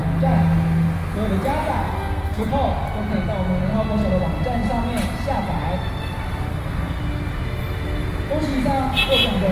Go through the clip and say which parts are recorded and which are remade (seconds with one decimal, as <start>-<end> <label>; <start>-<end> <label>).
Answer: 0.0-1.8 recorded; 1.8-2.5 remade; 2.5-6.5 recorded; 6.5-7.0 remade; 7.0-9.5 recorded